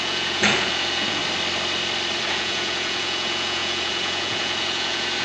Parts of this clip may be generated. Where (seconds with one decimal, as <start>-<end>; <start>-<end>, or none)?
0.0-1.2; 2.3-5.2